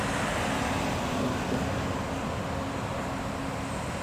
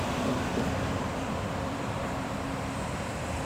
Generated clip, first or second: second